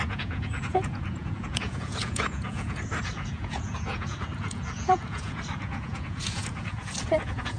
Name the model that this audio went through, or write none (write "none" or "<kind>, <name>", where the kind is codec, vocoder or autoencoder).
vocoder, Vocos